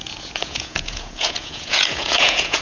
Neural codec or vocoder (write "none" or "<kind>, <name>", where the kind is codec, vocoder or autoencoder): vocoder, Vocos